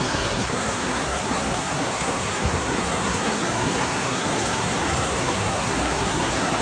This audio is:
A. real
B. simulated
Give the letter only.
B